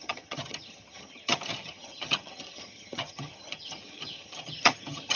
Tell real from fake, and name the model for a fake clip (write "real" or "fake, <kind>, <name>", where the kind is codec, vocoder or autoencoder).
fake, vocoder, HiFi-GAN